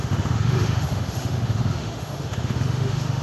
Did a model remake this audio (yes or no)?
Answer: yes